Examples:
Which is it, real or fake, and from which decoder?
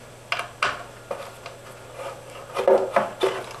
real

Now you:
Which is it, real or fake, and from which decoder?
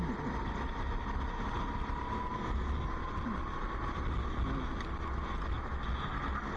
real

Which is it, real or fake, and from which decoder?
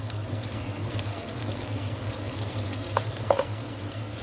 fake, codec, SNAC